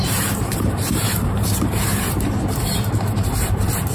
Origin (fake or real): fake